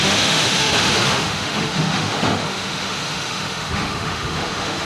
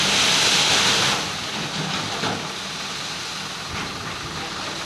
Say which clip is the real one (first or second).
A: second